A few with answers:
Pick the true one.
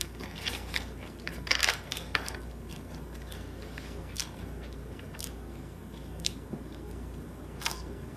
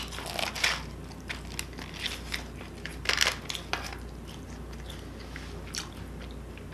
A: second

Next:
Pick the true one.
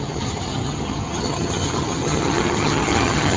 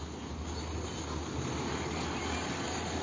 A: second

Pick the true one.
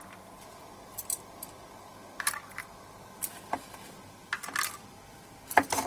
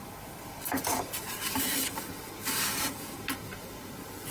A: first